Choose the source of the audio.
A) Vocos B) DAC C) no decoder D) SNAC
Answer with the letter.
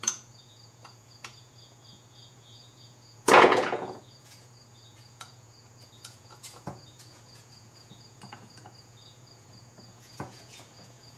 A